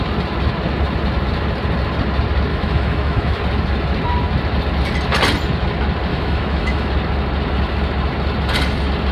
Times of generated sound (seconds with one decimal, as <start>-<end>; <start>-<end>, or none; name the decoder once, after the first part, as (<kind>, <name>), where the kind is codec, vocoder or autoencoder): 2.5-3.4 (autoencoder, DAC-VAE); 6.1-6.9